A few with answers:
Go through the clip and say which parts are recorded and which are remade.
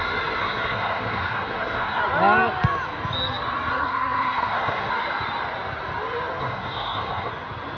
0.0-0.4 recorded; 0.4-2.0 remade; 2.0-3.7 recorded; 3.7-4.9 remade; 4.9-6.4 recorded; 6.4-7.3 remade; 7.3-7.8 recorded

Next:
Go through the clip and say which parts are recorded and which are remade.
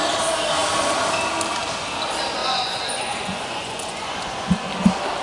0.0-2.4 recorded; 2.4-4.7 remade; 4.7-5.2 recorded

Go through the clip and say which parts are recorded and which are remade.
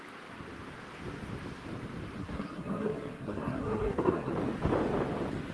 0.0-2.2 recorded; 2.2-4.3 remade; 4.3-5.5 recorded